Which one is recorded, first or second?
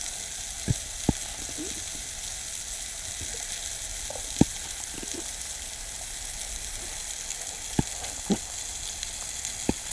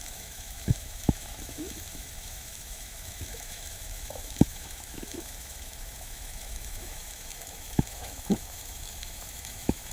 first